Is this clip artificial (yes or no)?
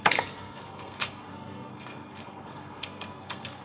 yes